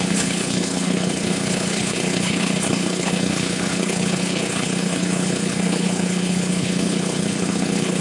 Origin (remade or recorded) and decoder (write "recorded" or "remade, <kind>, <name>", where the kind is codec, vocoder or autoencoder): remade, codec, HILCodec